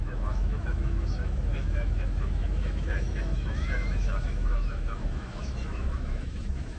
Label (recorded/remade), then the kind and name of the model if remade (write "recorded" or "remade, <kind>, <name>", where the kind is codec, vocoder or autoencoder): remade, autoencoder, DAC-VAE